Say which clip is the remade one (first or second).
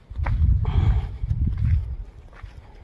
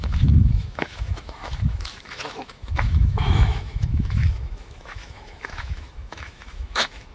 second